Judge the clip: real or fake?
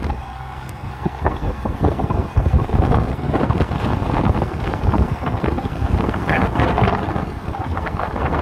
fake